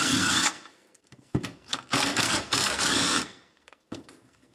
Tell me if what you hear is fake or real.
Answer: fake